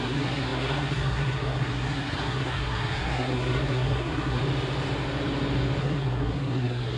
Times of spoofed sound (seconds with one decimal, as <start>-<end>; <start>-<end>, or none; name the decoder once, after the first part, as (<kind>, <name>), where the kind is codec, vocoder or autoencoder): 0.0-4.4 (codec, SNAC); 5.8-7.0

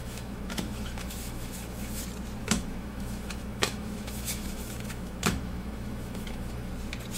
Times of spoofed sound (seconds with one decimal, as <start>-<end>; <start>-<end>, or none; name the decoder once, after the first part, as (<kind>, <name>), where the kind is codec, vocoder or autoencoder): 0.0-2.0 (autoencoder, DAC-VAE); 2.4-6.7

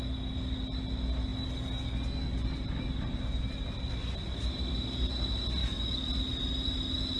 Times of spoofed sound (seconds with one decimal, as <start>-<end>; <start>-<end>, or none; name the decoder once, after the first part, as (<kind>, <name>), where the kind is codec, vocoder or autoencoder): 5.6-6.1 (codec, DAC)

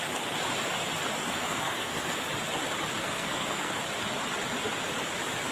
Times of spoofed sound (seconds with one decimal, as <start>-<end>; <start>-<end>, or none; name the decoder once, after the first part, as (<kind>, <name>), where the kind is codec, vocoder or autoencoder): 1.2-2.2 (codec, SNAC); 3.0-3.8